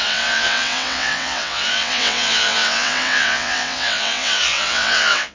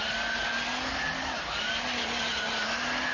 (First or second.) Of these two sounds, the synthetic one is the first